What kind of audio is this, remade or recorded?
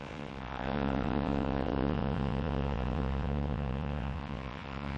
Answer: remade